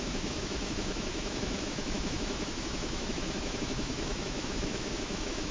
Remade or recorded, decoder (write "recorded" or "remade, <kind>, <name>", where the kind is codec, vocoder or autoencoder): remade, autoencoder, DAC-VAE